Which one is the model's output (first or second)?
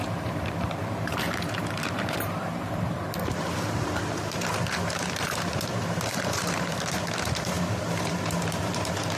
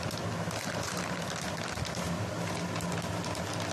first